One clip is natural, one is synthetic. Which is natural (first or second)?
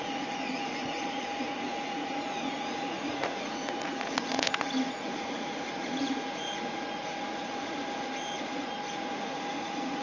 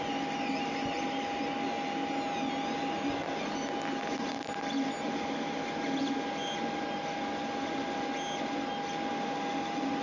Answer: second